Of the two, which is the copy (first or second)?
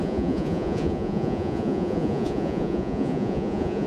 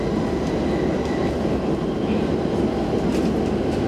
first